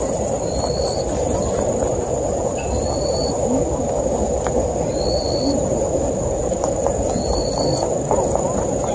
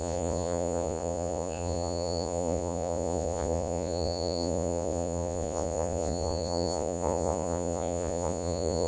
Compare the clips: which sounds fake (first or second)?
second